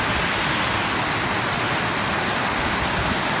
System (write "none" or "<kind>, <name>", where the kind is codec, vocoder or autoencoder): none